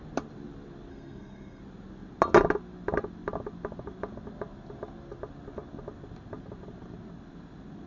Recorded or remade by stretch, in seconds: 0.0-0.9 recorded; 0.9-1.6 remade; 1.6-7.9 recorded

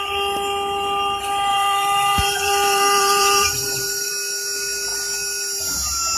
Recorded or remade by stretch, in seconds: 0.0-1.5 recorded; 1.5-4.1 remade; 4.1-6.2 recorded